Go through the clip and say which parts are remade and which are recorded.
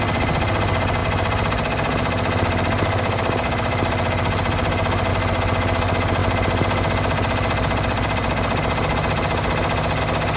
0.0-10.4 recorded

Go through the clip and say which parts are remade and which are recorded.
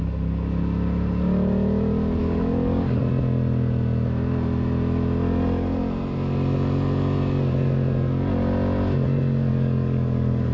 0.0-2.2 recorded; 2.2-3.0 remade; 3.0-9.5 recorded; 9.5-10.5 remade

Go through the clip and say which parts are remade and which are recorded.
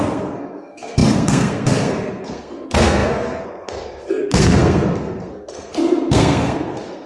0.0-7.1 remade